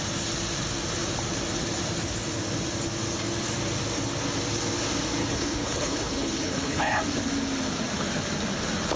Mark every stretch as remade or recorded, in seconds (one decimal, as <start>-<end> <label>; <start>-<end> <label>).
0.0-5.2 recorded; 5.2-7.0 remade; 7.0-9.0 recorded